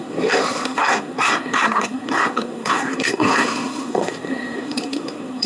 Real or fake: fake